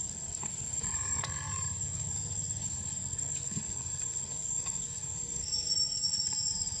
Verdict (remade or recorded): remade